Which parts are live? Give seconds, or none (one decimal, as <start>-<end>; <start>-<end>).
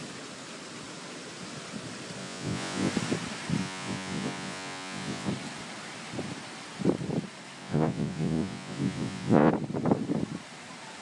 0.0-2.2; 2.9-3.6; 5.3-7.6; 9.5-11.0